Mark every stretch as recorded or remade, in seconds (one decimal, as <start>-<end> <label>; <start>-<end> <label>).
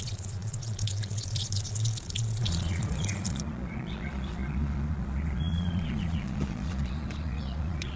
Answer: 0.0-8.0 remade